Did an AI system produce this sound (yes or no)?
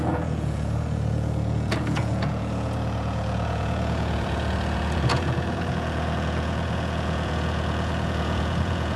yes